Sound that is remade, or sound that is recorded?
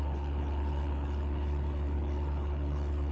remade